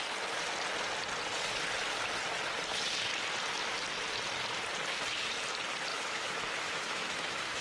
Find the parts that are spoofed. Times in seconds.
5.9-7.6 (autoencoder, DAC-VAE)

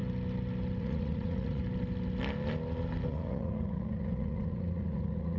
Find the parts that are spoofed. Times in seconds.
0.8-1.6 (vocoder, Vocos); 3.1-5.4

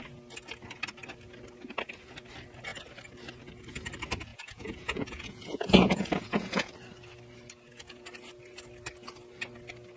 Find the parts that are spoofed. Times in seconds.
4.3-6.7 (vocoder, Vocos)

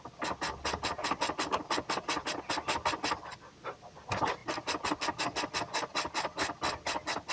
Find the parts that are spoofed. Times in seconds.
none

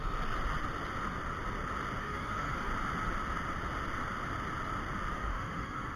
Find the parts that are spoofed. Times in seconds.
2.0-2.7 (autoencoder, DAC-VAE); 5.1-6.0

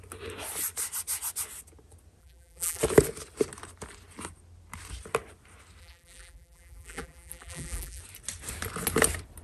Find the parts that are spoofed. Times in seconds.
2.2-2.8 (vocoder, BigVGAN v2); 5.8-8.0

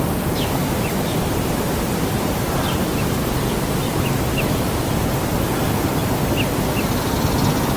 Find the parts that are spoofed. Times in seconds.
0.6-5.3 (vocoder, BigVGAN v2)